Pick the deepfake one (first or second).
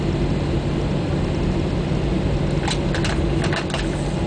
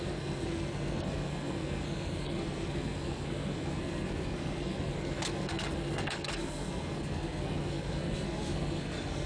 second